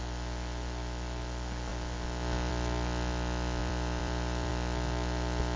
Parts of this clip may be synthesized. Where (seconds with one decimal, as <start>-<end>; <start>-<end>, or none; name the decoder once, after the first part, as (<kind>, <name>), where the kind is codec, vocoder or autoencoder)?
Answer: 3.6-4.5 (vocoder, BigVGAN v2)